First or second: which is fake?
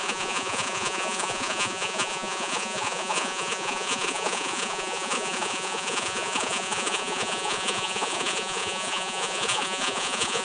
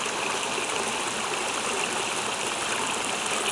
first